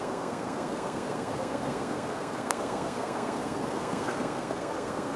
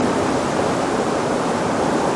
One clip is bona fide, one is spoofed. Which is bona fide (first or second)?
second